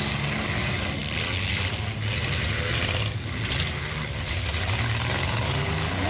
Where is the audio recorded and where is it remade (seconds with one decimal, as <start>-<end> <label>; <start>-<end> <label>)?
0.0-6.1 recorded